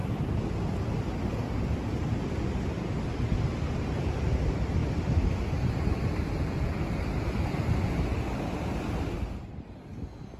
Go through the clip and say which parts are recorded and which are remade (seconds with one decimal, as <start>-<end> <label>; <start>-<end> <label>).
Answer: 0.0-10.4 recorded